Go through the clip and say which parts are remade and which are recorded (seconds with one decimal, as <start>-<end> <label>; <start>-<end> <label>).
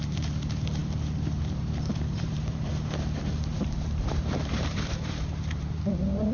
0.0-0.8 remade; 0.8-1.4 recorded; 1.4-2.7 remade; 2.7-3.2 recorded; 3.2-6.3 remade